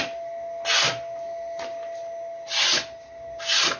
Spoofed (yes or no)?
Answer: no